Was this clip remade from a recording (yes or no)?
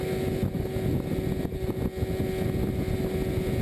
no